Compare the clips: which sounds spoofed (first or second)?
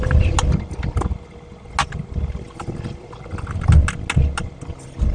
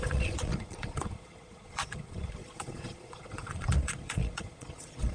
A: second